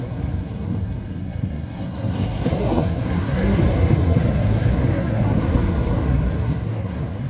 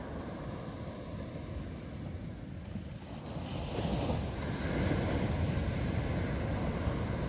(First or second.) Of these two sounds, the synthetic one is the first